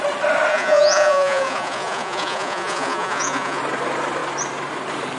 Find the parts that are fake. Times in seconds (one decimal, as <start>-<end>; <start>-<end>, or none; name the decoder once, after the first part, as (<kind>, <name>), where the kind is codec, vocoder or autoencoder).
0.5-3.6 (vocoder, Vocos)